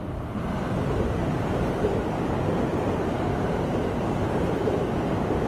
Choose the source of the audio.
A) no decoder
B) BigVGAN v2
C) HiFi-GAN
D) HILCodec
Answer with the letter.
B